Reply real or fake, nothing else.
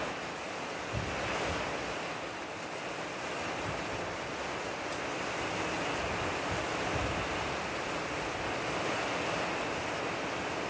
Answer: real